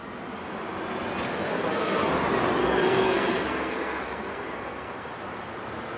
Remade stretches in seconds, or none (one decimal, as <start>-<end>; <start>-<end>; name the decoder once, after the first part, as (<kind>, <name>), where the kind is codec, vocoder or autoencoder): 1.5-2.1 (codec, SNAC); 2.6-5.1